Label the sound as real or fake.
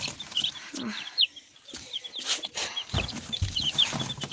real